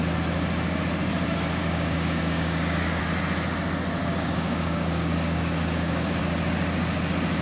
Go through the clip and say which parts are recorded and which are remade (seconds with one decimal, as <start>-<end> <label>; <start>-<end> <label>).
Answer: 0.0-1.6 recorded; 1.6-3.0 remade; 3.0-4.0 recorded; 4.0-6.2 remade; 6.2-7.4 recorded